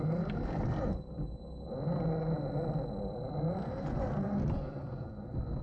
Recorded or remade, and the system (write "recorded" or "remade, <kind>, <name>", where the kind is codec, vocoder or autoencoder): recorded